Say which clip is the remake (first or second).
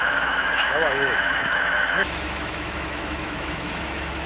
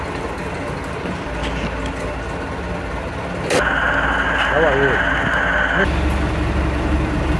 first